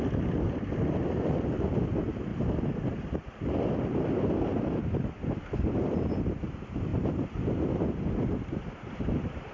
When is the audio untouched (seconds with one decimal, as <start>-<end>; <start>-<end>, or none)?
4.5-5.3; 6.9-7.4